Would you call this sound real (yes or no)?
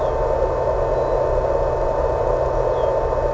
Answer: yes